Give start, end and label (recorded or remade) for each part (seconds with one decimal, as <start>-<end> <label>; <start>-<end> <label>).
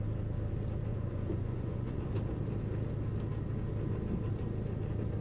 0.0-0.9 recorded; 0.9-2.1 remade; 2.1-5.2 recorded